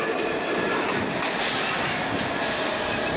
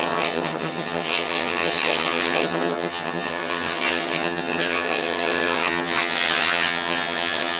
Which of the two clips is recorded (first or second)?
first